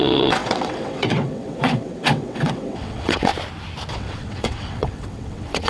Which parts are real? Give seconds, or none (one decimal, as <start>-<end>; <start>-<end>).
3.3-3.9